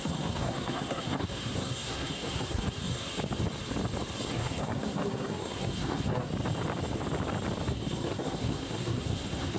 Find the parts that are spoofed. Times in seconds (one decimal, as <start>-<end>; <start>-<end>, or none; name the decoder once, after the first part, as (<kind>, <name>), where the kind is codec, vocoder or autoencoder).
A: 0.0-3.1 (codec, SNAC); 4.3-6.3; 7.7-9.6